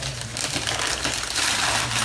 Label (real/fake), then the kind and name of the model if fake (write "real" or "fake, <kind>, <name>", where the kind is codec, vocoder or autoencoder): real